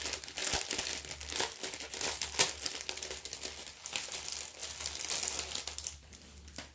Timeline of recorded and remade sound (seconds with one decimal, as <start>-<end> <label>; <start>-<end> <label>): 0.0-6.7 recorded